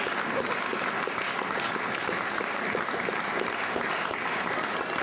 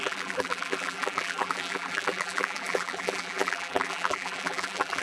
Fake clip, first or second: second